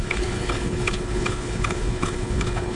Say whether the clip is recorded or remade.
remade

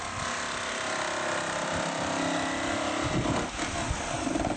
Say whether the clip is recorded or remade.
recorded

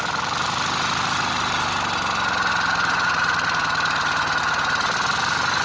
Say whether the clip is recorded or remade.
recorded